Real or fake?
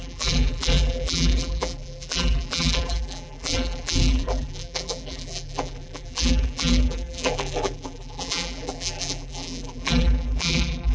fake